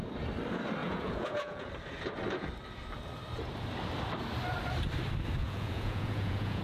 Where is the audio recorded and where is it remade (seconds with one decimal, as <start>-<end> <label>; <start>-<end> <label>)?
0.0-0.8 recorded; 0.8-1.7 remade; 1.7-5.4 recorded; 5.4-6.6 remade